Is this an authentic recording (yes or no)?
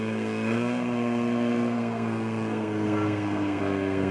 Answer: no